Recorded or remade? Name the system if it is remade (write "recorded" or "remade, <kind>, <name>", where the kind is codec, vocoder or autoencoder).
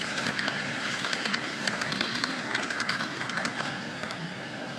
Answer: remade, codec, SNAC